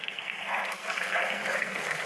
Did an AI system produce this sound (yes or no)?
yes